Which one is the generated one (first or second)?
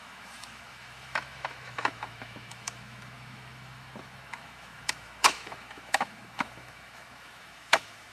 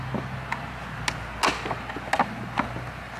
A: first